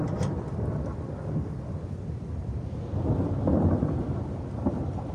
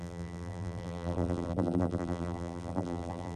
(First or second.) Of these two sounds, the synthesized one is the second